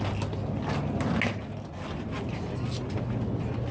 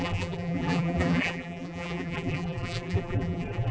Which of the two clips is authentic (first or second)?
first